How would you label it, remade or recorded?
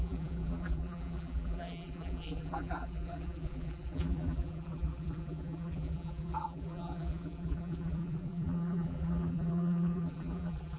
remade